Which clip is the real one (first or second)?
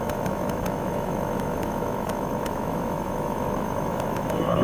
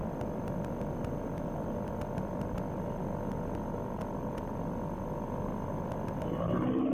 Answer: second